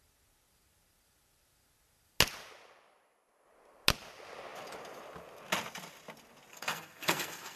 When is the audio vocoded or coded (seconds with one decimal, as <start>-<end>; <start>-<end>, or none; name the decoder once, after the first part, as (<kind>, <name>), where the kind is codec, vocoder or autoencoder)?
6.5-7.6 (codec, SNAC)